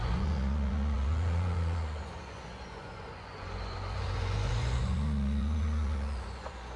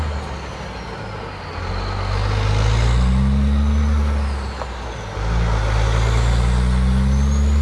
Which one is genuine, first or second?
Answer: second